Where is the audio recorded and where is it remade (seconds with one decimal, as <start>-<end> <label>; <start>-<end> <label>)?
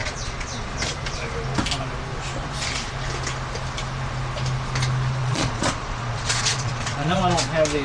0.0-0.7 remade; 0.7-5.2 recorded; 5.2-7.2 remade; 7.2-7.8 recorded